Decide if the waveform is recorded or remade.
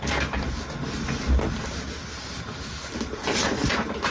recorded